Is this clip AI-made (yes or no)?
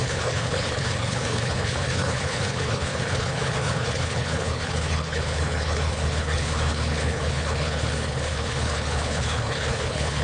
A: yes